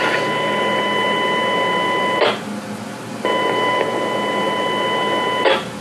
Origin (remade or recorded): recorded